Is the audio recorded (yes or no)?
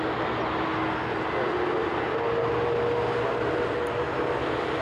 yes